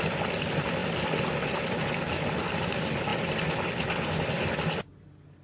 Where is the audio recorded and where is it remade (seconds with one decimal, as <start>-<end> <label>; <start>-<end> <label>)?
0.0-5.4 recorded

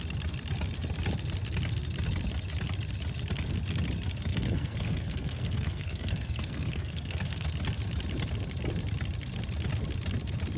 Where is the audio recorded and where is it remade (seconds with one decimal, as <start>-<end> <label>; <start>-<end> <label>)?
0.0-4.3 recorded; 4.3-7.5 remade; 7.5-10.6 recorded

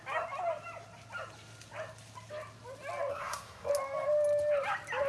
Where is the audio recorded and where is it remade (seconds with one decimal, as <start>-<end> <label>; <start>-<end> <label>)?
0.0-3.1 recorded; 3.1-3.7 remade; 3.7-5.1 recorded

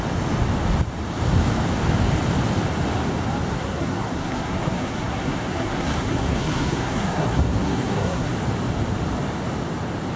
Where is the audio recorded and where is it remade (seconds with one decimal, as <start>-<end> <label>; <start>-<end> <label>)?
0.0-3.5 recorded; 3.5-8.3 remade; 8.3-10.2 recorded